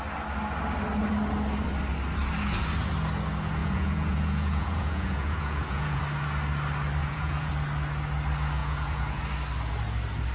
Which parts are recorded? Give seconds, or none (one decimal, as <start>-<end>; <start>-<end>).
0.0-3.6; 6.0-7.0; 7.5-8.6; 9.2-10.3